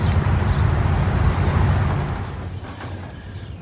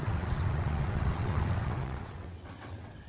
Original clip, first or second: first